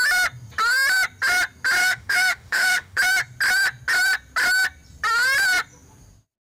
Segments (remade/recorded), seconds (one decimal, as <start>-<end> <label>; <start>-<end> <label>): 0.0-1.8 recorded; 1.8-3.0 remade; 3.0-6.5 recorded